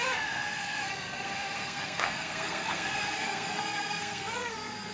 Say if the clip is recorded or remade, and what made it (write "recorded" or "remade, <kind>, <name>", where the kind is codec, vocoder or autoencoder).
remade, codec, SNAC